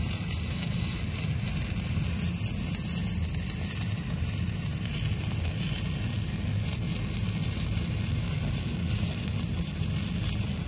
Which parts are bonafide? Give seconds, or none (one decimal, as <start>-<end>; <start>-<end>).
0.0-10.7